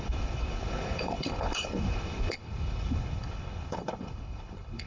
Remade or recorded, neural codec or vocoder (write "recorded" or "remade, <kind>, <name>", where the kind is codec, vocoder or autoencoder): remade, codec, HILCodec